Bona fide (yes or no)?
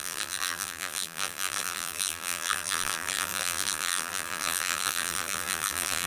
no